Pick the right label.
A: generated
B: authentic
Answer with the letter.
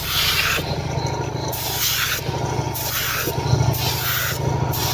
B